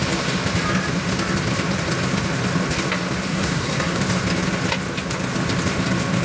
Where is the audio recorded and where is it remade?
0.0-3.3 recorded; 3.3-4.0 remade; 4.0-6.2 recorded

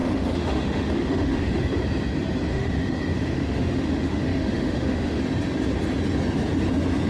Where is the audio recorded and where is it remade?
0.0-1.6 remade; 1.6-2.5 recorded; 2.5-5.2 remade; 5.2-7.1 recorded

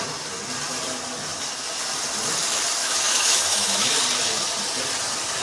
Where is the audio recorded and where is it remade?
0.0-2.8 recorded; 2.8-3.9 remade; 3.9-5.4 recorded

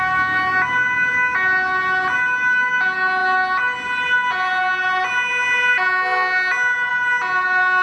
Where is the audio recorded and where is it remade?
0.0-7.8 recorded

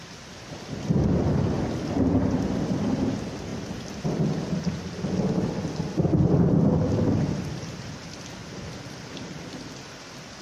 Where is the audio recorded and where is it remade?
0.0-8.4 recorded; 8.4-9.8 remade; 9.8-10.4 recorded